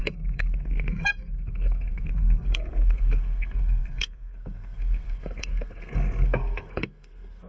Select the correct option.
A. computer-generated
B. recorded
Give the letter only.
A